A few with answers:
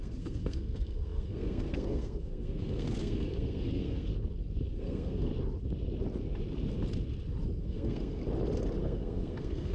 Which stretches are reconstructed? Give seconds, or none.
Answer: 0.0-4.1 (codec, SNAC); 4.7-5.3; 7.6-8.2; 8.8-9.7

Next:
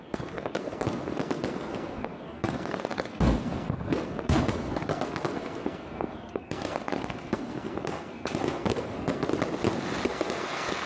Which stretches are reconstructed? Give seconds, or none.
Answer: 0.0-9.3 (codec, SNAC); 10.1-10.9

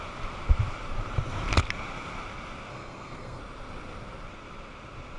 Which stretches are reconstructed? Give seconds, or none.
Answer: 2.7-3.4 (codec, SNAC)